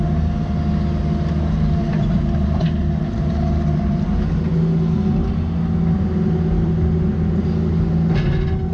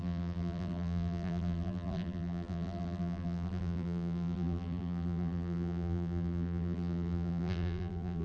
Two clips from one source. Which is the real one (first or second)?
first